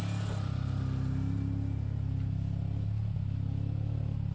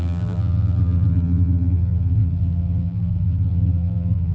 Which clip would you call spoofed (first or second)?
second